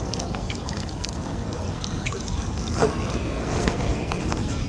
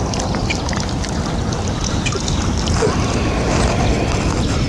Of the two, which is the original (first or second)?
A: second